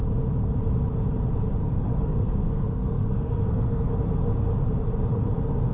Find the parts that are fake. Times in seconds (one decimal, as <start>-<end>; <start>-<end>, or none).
1.6-3.9